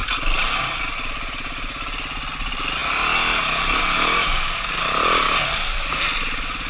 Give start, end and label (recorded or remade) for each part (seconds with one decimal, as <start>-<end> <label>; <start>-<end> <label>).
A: 0.0-6.7 recorded